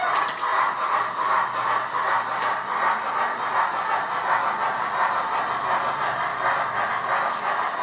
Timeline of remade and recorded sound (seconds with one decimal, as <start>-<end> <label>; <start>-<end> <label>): 0.0-0.5 recorded; 0.5-3.1 remade; 3.1-7.8 recorded